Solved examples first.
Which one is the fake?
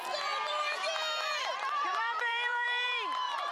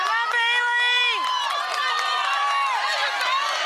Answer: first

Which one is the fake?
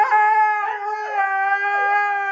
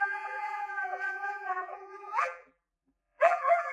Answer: second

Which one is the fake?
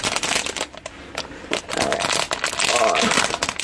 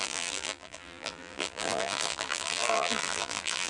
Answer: second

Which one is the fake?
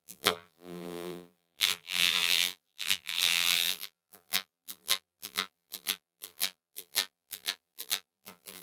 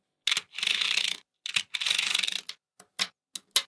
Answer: first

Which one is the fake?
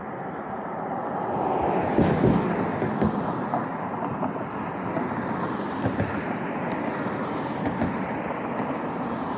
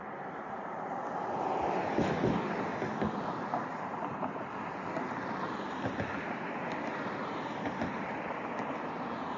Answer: second